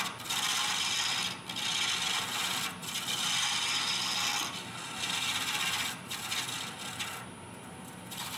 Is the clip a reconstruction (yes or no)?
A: no